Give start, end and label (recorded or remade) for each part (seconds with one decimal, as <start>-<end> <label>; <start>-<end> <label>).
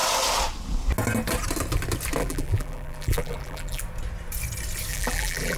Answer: 0.0-2.2 recorded; 2.2-3.8 remade; 3.8-4.9 recorded; 4.9-5.6 remade